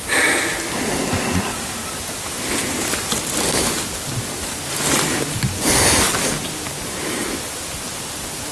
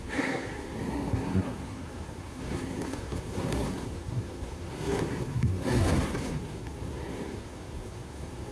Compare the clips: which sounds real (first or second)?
first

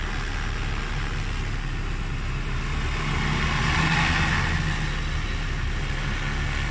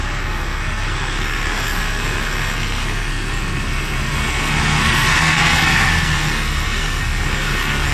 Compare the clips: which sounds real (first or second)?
first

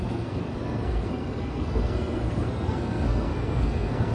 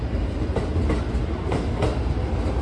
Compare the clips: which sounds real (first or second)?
second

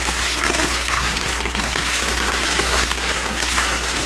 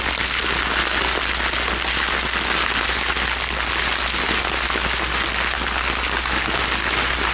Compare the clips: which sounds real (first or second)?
second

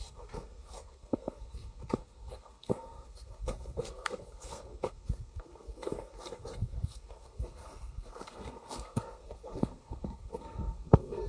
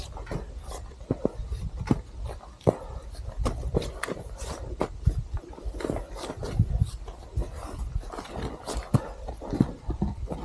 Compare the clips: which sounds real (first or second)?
second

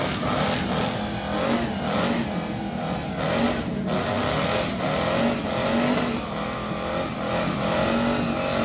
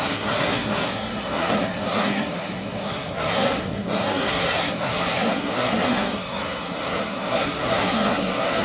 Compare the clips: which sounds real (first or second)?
first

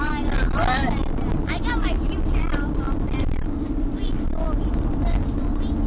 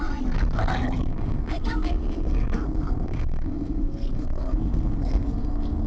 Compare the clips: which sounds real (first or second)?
first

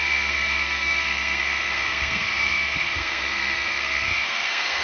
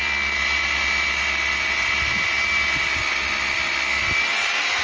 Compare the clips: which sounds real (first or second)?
second